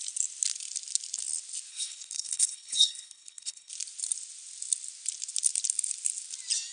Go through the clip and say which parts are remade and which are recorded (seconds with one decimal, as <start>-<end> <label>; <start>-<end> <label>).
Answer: 0.0-1.7 recorded; 1.7-3.7 remade; 3.7-6.7 recorded